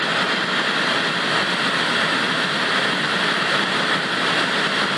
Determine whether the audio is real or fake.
real